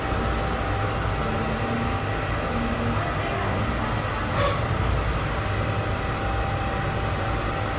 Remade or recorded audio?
recorded